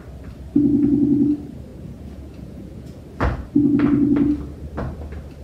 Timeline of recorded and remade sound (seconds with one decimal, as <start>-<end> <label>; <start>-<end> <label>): 0.0-1.7 recorded; 1.7-3.0 remade; 3.0-5.4 recorded